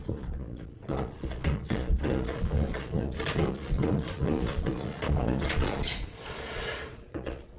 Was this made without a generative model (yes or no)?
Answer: no